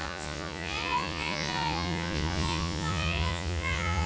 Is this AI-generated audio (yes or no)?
yes